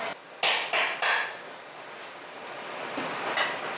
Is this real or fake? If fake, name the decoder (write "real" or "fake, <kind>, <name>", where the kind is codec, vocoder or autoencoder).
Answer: real